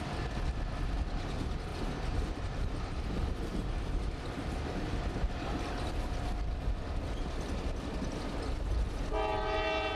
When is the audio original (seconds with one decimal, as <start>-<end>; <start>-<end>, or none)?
0.0-1.7; 5.3-10.0